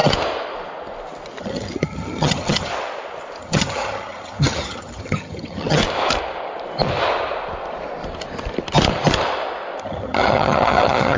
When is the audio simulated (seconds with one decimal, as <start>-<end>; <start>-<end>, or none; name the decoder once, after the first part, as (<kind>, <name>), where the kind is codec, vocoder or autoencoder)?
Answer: 1.4-2.7 (vocoder, HiFi-GAN); 3.4-5.8; 9.8-11.2